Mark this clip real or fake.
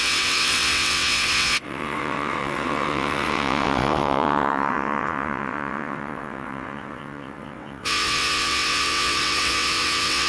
fake